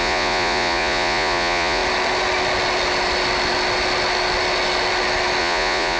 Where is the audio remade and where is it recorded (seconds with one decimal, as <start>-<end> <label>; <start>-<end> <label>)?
0.0-1.8 remade; 1.8-5.4 recorded; 5.4-6.0 remade